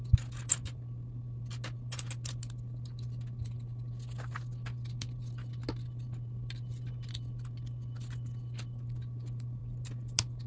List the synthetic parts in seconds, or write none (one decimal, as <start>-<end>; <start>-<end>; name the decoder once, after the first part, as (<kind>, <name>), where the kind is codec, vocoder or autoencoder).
none